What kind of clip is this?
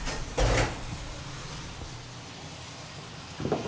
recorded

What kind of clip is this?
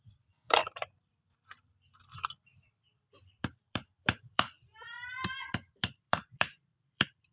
remade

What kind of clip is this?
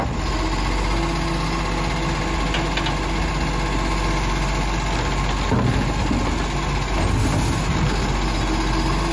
recorded